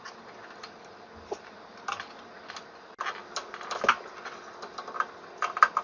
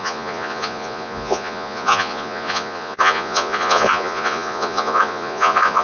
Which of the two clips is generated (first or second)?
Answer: second